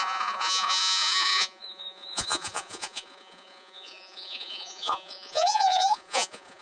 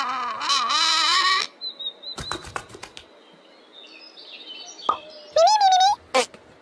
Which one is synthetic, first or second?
first